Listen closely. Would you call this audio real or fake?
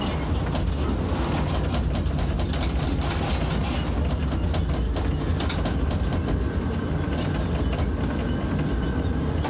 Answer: real